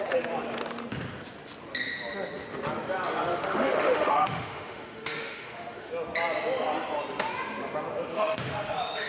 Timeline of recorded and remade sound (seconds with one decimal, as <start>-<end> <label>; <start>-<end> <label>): 0.0-3.3 recorded; 3.3-5.9 remade; 5.9-8.1 recorded; 8.1-9.1 remade